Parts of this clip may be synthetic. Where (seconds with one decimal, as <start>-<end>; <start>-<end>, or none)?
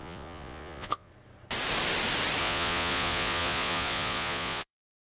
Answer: 0.0-1.1; 2.4-5.1